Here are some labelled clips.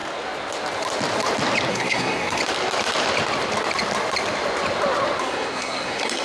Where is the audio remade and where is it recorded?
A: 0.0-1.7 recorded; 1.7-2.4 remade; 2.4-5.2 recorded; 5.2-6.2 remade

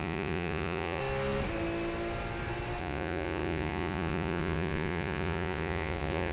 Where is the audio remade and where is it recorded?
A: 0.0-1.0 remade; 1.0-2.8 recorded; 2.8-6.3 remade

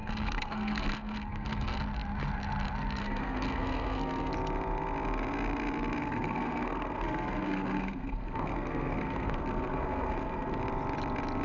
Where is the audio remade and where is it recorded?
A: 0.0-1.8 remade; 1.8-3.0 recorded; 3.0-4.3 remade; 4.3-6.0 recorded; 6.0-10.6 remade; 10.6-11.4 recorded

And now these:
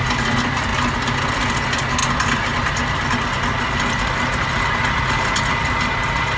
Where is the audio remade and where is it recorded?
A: 0.0-6.4 recorded

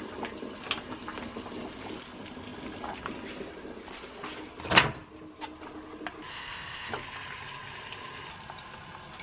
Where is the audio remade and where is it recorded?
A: 0.0-6.3 recorded; 6.3-6.9 remade; 6.9-9.2 recorded

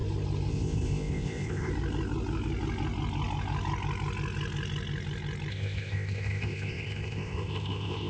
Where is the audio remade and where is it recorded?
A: 0.0-0.5 recorded; 0.5-1.7 remade; 1.7-5.5 recorded; 5.5-8.1 remade

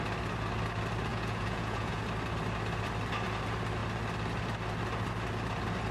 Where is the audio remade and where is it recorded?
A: 0.0-1.1 recorded; 1.1-2.0 remade; 2.0-5.9 recorded